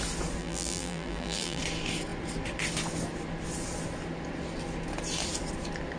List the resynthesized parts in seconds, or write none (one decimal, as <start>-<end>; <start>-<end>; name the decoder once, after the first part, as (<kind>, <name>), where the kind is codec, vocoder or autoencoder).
0.4-1.6 (vocoder, BigVGAN v2)